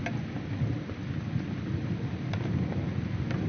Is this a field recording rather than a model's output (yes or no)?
yes